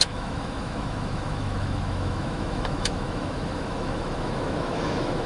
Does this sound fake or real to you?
fake